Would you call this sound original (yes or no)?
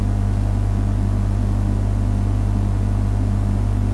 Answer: yes